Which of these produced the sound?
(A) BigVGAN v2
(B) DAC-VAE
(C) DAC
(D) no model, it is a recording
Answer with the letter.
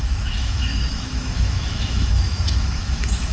B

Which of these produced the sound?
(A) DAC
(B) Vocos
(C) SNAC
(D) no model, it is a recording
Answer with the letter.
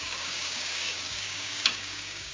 A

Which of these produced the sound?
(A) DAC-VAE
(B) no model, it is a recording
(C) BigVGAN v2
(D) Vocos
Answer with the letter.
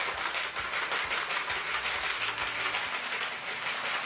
B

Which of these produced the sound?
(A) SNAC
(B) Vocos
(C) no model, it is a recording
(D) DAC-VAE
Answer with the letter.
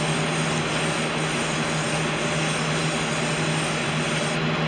C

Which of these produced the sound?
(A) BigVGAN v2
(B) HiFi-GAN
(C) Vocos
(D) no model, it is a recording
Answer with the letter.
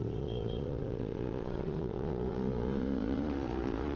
C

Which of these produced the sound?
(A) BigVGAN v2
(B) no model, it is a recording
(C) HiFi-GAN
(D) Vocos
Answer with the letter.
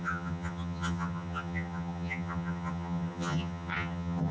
C